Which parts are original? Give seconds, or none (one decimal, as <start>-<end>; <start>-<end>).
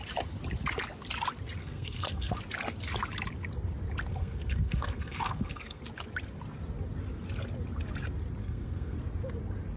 0.0-1.6; 2.4-4.1; 5.8-8.4; 9.0-9.8